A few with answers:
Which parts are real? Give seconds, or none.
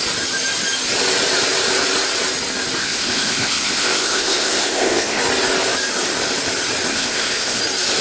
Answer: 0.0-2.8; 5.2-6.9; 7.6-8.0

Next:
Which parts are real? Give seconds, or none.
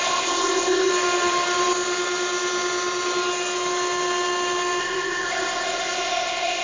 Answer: 0.9-4.8